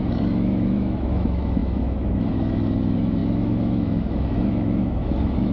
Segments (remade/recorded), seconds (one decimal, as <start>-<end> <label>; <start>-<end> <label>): 0.0-5.5 remade